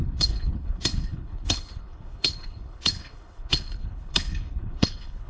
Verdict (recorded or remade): remade